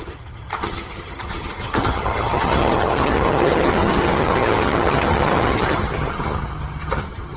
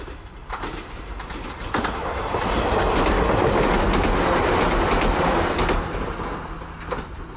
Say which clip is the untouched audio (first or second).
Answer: second